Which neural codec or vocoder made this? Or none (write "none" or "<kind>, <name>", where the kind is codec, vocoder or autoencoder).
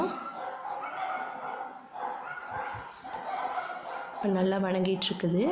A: none